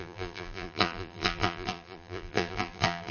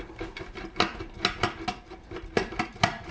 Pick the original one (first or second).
second